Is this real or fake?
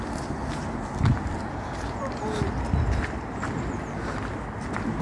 real